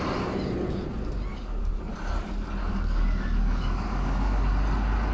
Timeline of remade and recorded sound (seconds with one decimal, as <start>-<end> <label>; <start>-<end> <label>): 0.0-1.3 recorded; 1.3-1.8 remade; 1.8-2.6 recorded; 2.6-4.5 remade; 4.5-5.1 recorded